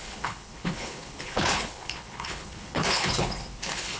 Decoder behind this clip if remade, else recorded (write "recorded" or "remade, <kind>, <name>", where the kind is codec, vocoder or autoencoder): remade, codec, HILCodec